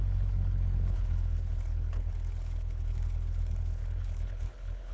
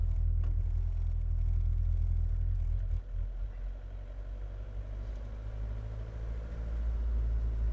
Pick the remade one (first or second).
first